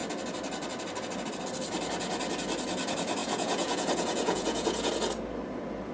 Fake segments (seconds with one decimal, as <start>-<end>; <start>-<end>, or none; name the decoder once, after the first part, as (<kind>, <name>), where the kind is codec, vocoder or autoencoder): 3.2-4.9 (vocoder, Vocos)